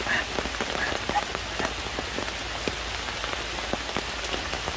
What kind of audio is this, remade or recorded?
recorded